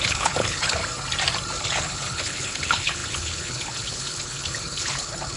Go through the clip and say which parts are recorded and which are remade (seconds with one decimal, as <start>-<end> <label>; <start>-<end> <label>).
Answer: 0.0-0.8 remade; 0.8-1.6 recorded; 1.6-5.4 remade